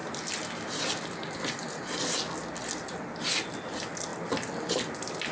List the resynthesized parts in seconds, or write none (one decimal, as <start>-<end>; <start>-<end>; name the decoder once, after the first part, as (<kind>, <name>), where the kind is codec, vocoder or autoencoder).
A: none